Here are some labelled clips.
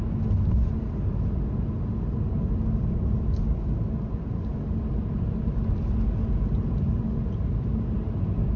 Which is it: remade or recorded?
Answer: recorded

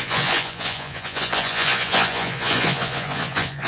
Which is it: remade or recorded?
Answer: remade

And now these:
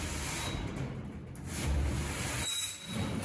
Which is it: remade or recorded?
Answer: recorded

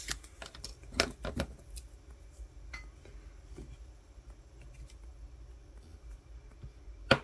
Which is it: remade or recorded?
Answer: recorded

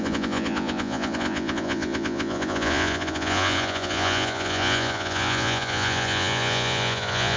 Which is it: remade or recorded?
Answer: remade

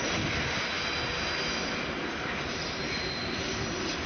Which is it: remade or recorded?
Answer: recorded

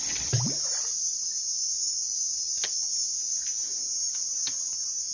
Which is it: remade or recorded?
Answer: recorded